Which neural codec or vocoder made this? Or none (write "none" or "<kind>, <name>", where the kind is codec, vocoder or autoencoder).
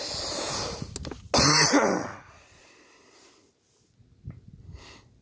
none